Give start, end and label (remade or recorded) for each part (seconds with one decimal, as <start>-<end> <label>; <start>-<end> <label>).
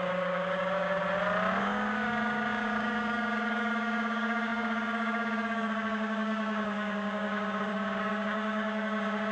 0.0-1.0 remade; 1.0-1.6 recorded; 1.6-9.3 remade